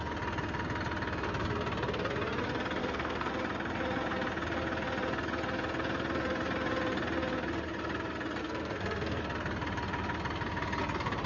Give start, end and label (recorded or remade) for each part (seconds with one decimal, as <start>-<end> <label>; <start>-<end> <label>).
0.0-2.8 recorded; 2.8-3.3 remade; 3.3-8.4 recorded; 8.4-9.2 remade; 9.2-11.3 recorded